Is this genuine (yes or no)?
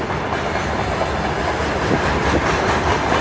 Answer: yes